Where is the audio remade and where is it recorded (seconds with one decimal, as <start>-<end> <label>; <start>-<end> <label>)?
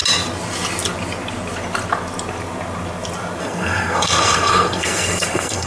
0.0-3.4 recorded; 3.4-5.7 remade